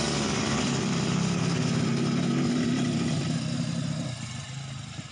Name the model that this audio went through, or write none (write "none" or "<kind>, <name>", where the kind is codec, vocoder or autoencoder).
none